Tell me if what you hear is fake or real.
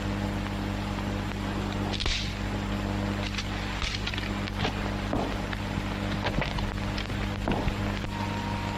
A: real